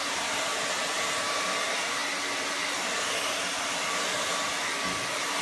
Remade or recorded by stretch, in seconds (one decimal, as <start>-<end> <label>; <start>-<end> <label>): 0.0-0.5 remade; 0.5-1.0 recorded; 1.0-2.0 remade; 2.0-5.4 recorded